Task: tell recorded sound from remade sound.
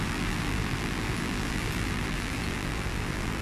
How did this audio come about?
remade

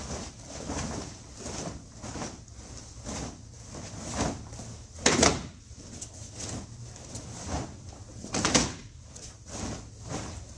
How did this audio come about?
recorded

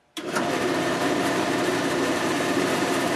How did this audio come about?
remade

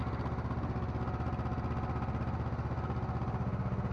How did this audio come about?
recorded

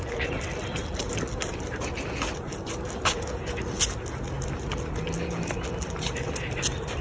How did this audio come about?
recorded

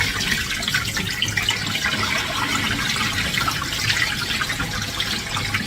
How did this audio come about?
recorded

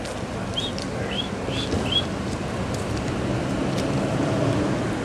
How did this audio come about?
recorded